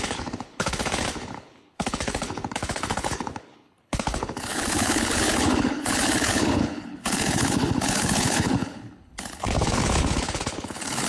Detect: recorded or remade remade